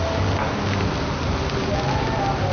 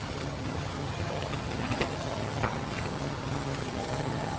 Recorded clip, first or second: first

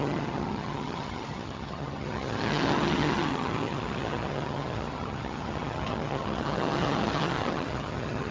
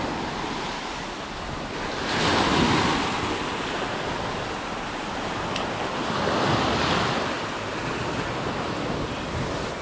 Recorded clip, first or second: second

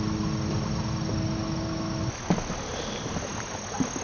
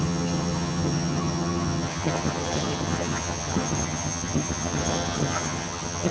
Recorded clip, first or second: first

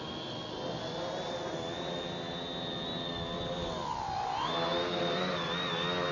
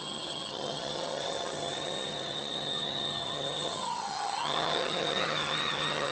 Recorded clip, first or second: first